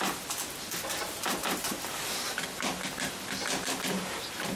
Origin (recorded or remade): recorded